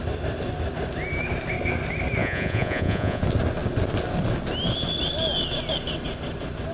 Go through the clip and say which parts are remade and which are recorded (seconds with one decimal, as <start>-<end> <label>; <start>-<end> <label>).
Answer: 0.0-2.2 recorded; 2.2-3.2 remade; 3.2-6.7 recorded

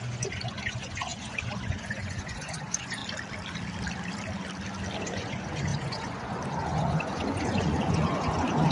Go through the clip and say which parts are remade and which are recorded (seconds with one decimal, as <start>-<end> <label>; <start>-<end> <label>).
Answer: 0.0-3.0 remade; 3.0-5.0 recorded; 5.0-8.7 remade

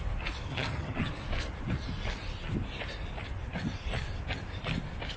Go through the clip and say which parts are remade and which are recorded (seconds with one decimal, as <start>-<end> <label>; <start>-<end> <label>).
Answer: 0.0-0.5 recorded; 0.5-1.1 remade; 1.1-5.2 recorded

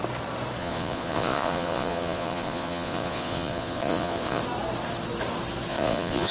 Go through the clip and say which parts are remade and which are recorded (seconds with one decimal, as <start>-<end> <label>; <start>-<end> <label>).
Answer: 0.0-0.6 recorded; 0.6-4.4 remade; 4.4-5.7 recorded; 5.7-6.3 remade

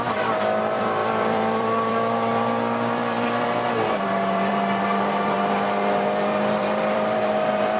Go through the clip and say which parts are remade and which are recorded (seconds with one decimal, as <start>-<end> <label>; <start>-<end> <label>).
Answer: 0.0-7.8 remade

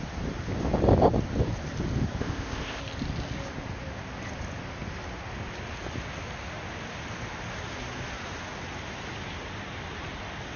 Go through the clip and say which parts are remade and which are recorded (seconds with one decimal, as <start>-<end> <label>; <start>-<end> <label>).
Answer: 0.0-2.2 recorded; 2.2-2.8 remade; 2.8-10.6 recorded

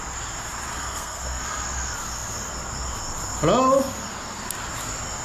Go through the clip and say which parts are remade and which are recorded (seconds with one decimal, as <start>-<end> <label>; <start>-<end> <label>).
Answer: 0.0-0.7 recorded; 0.7-1.4 remade; 1.4-5.2 recorded